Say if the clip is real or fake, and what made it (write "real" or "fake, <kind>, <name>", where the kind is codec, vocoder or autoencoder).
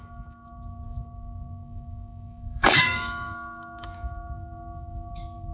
fake, codec, DAC